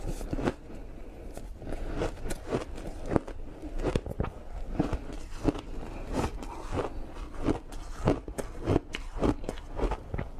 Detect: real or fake real